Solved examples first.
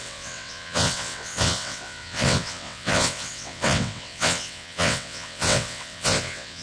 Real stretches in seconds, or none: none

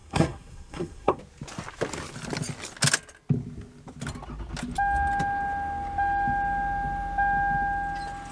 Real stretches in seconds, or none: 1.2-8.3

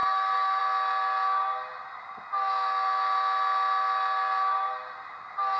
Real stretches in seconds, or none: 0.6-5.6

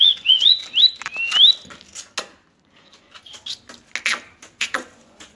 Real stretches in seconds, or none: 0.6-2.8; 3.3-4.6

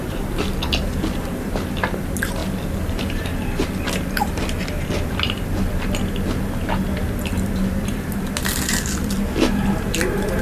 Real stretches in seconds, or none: 0.0-10.4

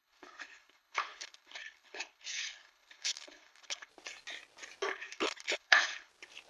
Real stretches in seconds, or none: 3.9-4.9; 6.1-6.5

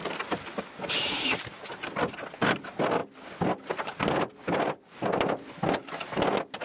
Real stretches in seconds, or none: 0.0-6.6